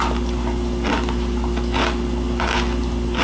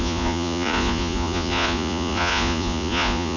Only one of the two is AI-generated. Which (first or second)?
second